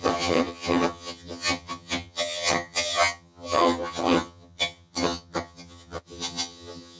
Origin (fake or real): fake